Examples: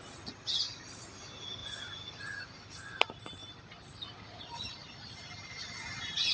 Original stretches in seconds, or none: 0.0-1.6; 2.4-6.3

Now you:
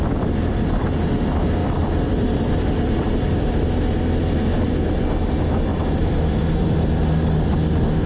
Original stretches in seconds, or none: 0.0-1.6; 3.6-5.7; 6.8-8.1